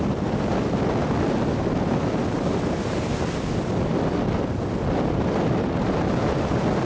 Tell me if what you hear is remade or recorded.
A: recorded